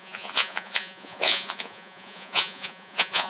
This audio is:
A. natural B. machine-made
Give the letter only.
B